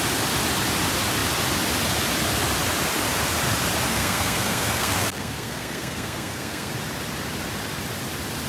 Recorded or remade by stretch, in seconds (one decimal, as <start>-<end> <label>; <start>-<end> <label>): 0.0-3.9 recorded; 3.9-6.7 remade; 6.7-8.5 recorded